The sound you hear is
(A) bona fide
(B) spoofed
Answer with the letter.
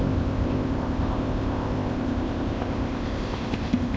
B